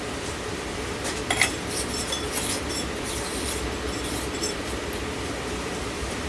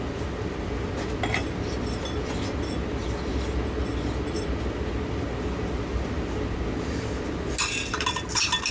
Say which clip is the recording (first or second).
second